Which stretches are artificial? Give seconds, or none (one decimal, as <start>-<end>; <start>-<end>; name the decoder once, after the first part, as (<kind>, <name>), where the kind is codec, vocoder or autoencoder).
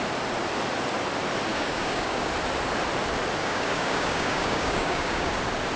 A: 1.5-2.3 (codec, DAC); 3.4-5.3